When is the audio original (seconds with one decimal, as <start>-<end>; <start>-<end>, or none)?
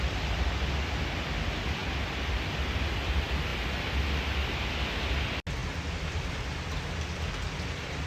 0.0-8.1